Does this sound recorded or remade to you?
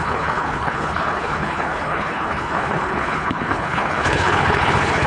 remade